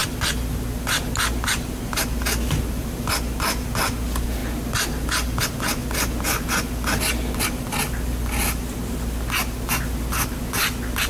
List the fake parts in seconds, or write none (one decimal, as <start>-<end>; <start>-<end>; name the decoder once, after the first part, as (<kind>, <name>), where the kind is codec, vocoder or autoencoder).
none